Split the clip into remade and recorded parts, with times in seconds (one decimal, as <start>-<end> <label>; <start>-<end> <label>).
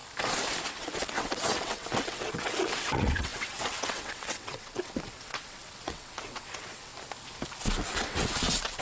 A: 0.0-0.7 recorded; 0.7-6.9 remade; 6.9-7.8 recorded; 7.8-8.8 remade